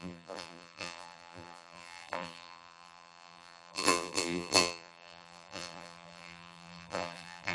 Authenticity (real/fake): fake